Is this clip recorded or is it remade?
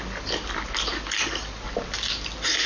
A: recorded